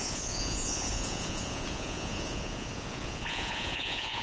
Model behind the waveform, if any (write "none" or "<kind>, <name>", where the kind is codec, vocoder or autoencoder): vocoder, Vocos